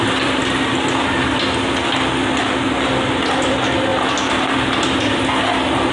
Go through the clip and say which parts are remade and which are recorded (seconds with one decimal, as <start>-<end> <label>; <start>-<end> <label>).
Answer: 0.0-5.9 recorded